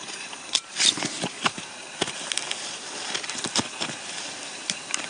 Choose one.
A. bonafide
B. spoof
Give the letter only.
A